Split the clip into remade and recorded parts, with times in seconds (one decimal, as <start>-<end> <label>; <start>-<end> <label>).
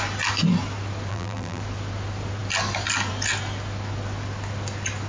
0.0-1.1 recorded; 1.1-1.6 remade; 1.6-5.1 recorded